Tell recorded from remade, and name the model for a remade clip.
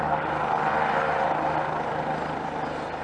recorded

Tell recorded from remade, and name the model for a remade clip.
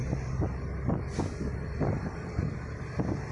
recorded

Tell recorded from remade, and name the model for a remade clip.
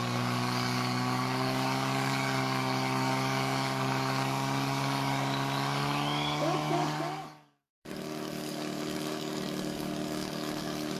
remade, codec, DAC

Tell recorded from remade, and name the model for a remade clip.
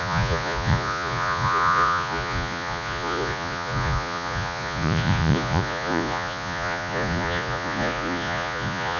remade, vocoder, Vocos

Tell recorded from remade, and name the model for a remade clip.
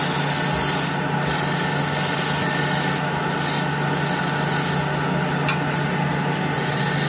recorded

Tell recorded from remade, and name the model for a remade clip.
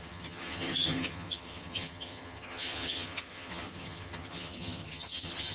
remade, vocoder, HiFi-GAN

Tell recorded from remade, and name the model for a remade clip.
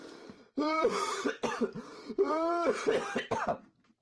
remade, vocoder, BigVGAN v2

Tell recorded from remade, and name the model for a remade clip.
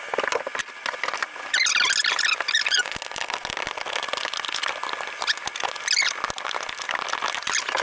recorded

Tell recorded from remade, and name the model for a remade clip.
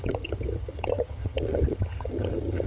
remade, vocoder, HiFi-GAN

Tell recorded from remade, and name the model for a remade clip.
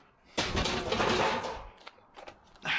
recorded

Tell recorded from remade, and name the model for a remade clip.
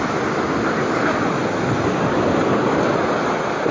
recorded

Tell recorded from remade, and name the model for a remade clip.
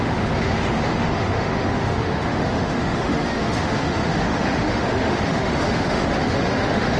remade, autoencoder, DAC-VAE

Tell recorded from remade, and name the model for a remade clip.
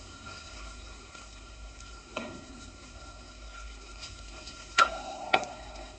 remade, codec, SNAC